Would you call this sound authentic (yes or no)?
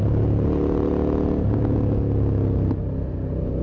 yes